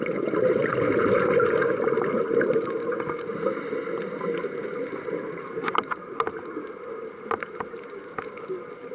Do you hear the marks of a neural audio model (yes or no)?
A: no